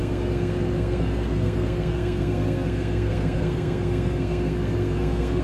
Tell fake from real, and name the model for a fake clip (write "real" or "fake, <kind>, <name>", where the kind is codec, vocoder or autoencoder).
fake, codec, SNAC